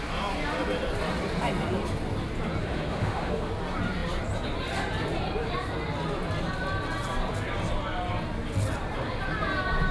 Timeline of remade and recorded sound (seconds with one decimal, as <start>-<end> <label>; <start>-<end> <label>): 0.0-2.6 recorded; 2.6-3.5 remade; 3.5-9.9 recorded